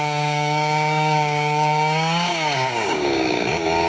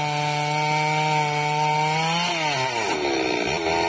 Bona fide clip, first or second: second